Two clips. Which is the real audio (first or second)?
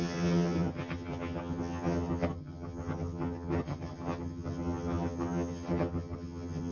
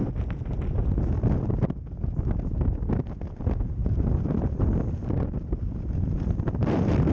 second